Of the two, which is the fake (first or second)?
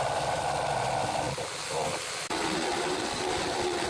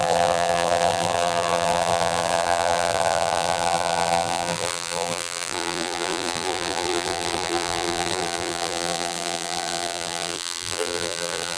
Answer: second